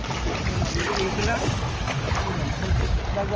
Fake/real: real